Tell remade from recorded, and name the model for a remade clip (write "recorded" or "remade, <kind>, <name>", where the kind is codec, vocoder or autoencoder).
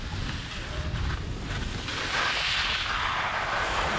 recorded